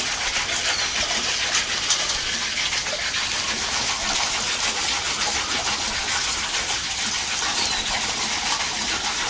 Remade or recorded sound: recorded